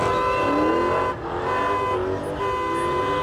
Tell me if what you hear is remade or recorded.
recorded